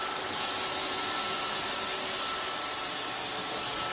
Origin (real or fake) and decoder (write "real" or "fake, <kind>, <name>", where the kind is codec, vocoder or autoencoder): real